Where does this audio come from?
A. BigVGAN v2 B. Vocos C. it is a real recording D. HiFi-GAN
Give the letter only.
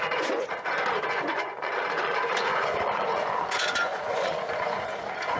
B